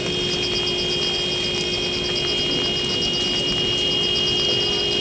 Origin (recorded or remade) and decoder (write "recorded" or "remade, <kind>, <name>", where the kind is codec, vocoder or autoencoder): recorded